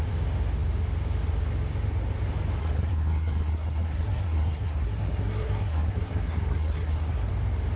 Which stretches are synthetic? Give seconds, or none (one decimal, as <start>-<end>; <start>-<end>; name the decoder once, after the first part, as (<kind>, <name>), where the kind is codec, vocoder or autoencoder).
2.6-7.3 (codec, SNAC)